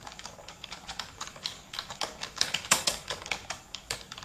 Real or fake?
fake